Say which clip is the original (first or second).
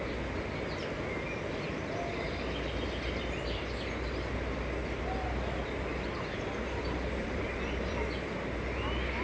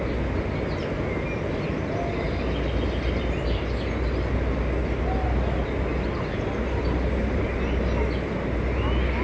second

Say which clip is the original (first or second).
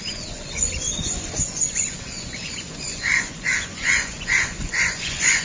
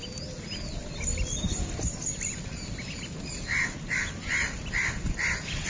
second